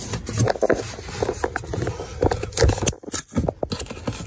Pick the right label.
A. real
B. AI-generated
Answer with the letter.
A